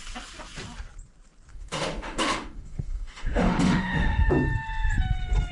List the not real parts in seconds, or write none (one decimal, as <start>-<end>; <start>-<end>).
1.5-4.3